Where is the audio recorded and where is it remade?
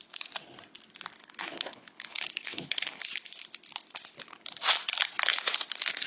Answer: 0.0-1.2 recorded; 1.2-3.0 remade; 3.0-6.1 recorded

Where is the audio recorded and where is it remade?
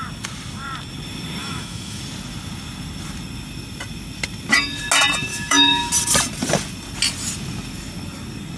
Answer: 0.0-1.4 recorded; 1.4-2.0 remade; 2.0-5.3 recorded; 5.3-5.9 remade; 5.9-8.6 recorded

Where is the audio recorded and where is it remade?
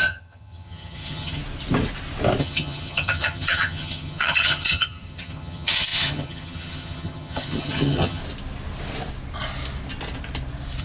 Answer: 0.0-1.4 remade; 1.4-2.4 recorded; 2.4-8.2 remade; 8.2-10.8 recorded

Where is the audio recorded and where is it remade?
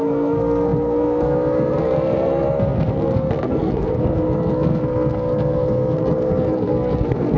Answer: 0.0-7.4 remade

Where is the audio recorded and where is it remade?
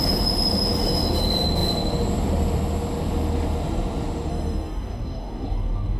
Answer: 0.0-4.3 recorded; 4.3-6.0 remade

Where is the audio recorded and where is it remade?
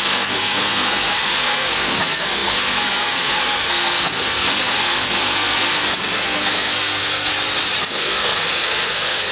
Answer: 0.0-7.3 remade; 7.3-7.8 recorded; 7.8-9.3 remade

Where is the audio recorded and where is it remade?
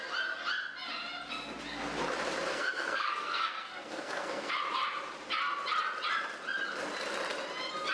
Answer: 0.0-2.5 recorded; 2.5-4.5 remade; 4.5-7.9 recorded